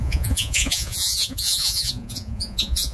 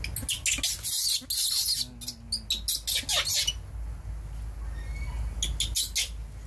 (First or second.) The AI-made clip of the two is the first